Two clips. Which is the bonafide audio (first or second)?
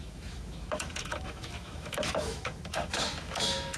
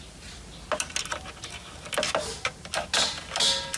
second